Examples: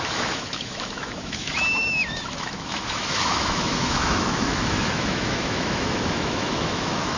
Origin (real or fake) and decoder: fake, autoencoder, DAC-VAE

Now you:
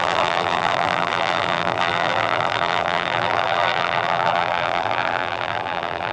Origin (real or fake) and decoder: fake, vocoder, BigVGAN v2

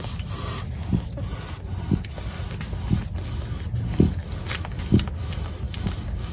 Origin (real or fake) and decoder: real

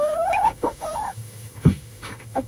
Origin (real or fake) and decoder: fake, autoencoder, DAC-VAE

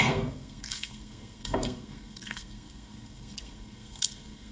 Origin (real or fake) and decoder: fake, codec, SNAC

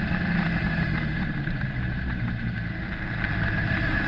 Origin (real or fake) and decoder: real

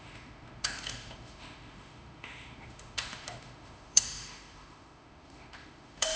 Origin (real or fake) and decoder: fake, autoencoder, DAC-VAE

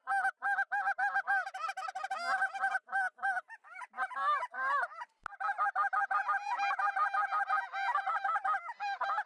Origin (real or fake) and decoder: real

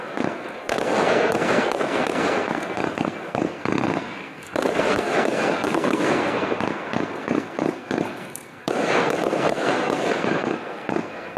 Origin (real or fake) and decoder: fake, codec, SNAC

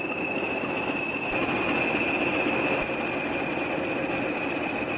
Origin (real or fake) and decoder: real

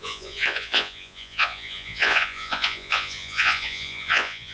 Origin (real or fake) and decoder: fake, vocoder, Vocos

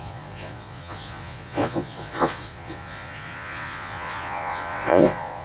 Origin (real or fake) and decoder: fake, vocoder, Vocos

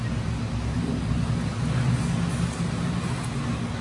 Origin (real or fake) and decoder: real